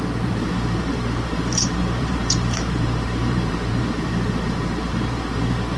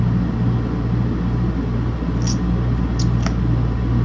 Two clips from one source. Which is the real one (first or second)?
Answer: second